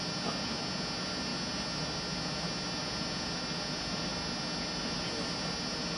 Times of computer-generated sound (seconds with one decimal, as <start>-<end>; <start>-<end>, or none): none